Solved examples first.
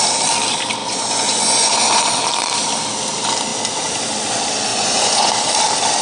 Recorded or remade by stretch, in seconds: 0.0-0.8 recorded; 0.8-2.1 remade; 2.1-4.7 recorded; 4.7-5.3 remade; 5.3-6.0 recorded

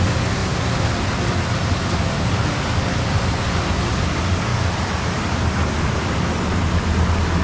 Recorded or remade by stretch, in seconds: 0.0-7.4 recorded

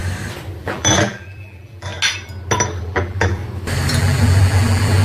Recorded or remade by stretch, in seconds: 0.0-0.6 recorded; 0.6-1.9 remade; 1.9-2.8 recorded; 2.8-3.4 remade; 3.4-3.9 recorded; 3.9-5.0 remade